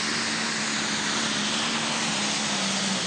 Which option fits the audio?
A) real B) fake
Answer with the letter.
A